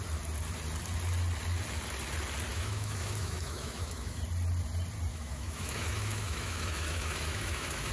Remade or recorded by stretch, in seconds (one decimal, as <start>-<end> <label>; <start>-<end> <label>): 0.0-2.5 recorded; 2.5-4.2 remade; 4.2-5.1 recorded; 5.1-7.9 remade